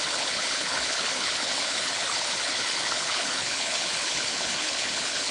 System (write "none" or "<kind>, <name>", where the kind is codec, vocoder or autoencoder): codec, HILCodec